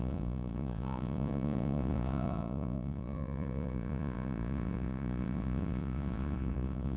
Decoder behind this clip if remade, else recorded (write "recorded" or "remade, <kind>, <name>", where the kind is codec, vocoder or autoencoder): remade, vocoder, Vocos